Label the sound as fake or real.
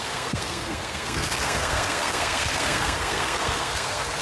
fake